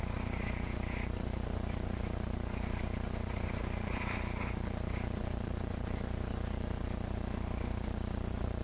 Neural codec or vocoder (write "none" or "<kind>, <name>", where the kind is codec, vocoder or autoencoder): vocoder, BigVGAN v2